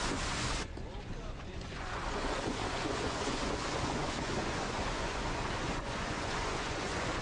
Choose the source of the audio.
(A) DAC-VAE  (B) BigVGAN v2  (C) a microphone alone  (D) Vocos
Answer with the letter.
D